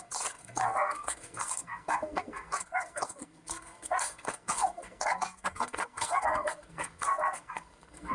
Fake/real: fake